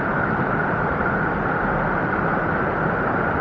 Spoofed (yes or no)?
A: no